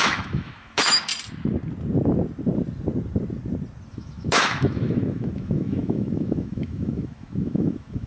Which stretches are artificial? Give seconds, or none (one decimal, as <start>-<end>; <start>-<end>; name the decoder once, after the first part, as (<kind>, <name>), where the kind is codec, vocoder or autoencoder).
0.0-1.1 (autoencoder, DAC-VAE); 3.9-8.1